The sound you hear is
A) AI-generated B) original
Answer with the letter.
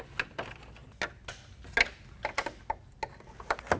B